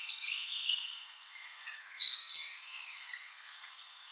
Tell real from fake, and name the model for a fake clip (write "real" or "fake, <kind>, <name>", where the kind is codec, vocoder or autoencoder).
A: fake, codec, SNAC